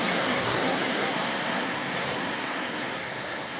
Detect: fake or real fake